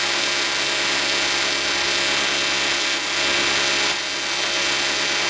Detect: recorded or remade recorded